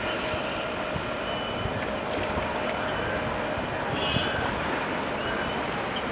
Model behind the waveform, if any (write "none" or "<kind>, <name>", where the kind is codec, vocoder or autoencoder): none